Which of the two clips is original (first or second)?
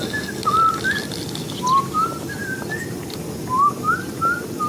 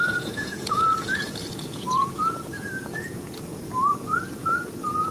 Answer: first